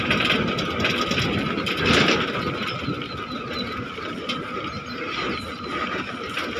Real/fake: real